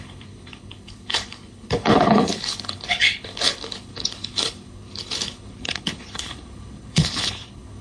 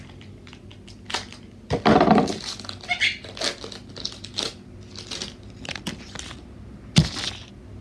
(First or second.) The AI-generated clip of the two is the first